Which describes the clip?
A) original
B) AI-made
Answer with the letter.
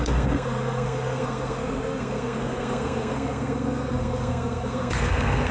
B